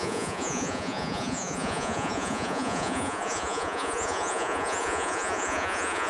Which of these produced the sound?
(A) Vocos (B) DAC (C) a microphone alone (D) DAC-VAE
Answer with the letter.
A